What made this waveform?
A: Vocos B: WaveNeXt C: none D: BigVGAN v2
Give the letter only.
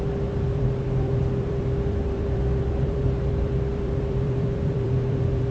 D